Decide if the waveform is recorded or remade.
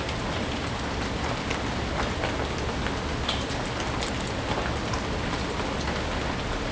recorded